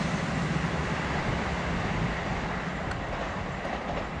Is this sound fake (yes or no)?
no